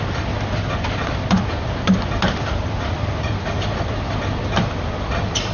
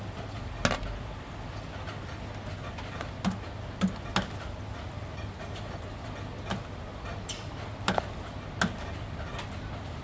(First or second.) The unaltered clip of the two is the second